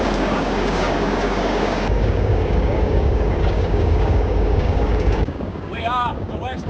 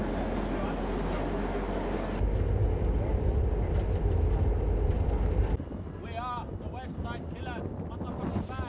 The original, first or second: second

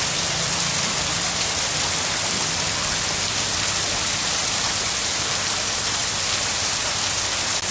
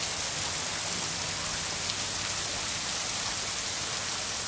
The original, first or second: second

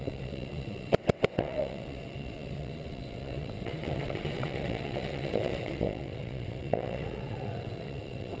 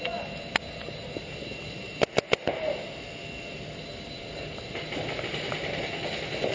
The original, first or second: second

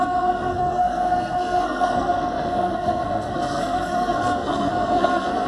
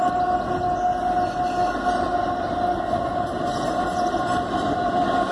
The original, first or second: second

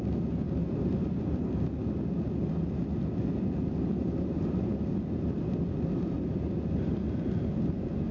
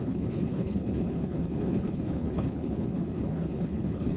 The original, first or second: first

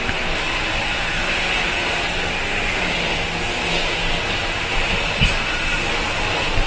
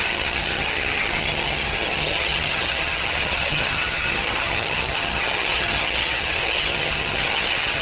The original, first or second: first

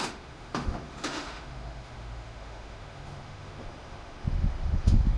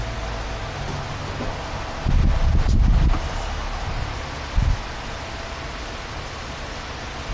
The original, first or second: second